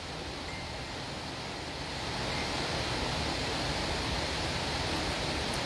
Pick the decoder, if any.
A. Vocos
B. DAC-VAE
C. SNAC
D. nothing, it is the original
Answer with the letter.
D